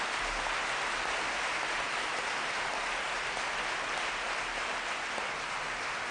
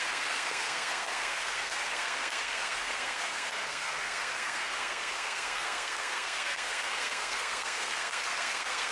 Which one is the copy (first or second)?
second